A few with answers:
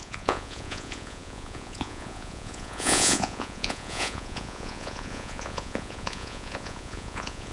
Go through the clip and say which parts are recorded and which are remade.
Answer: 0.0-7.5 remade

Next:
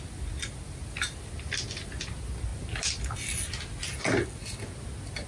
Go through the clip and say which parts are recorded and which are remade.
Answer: 0.0-5.3 recorded